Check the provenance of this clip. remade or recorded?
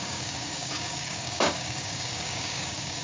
remade